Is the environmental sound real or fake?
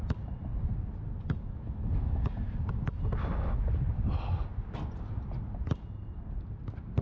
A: real